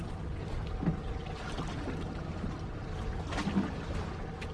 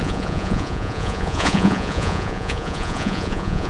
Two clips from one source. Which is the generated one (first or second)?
second